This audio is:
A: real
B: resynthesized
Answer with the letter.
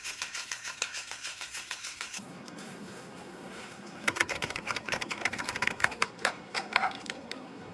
B